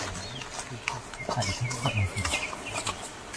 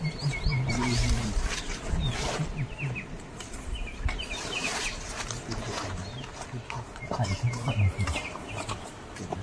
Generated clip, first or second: second